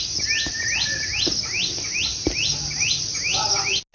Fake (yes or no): no